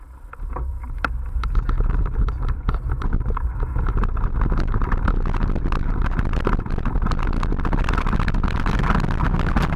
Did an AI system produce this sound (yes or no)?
no